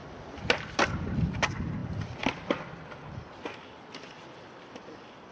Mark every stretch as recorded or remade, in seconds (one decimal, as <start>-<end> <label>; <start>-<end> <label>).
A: 0.0-5.3 recorded